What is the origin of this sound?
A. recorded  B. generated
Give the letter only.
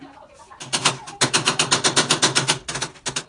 A